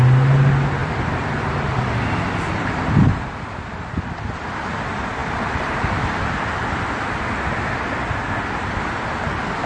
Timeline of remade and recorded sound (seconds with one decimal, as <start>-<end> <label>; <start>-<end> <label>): 0.0-0.8 recorded; 0.8-1.8 remade; 1.8-9.7 recorded